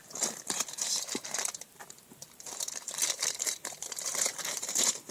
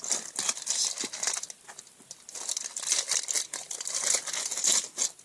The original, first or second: second